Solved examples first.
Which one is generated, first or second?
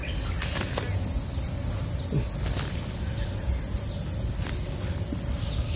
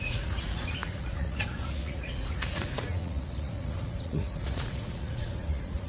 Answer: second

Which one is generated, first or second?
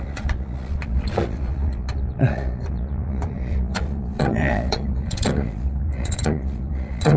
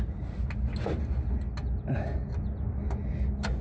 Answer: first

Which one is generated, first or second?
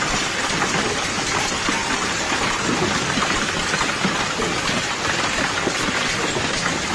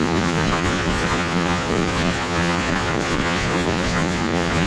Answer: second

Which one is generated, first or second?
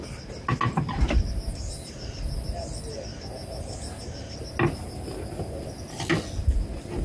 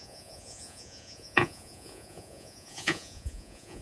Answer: second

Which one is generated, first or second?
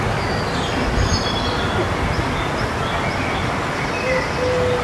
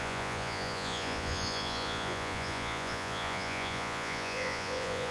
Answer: second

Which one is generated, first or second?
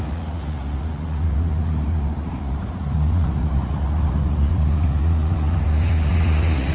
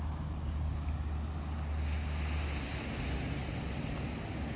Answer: first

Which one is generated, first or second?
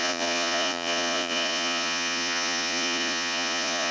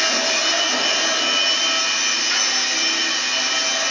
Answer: first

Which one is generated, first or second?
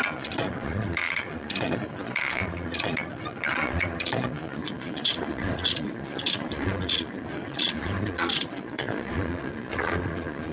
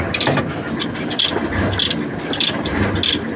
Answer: first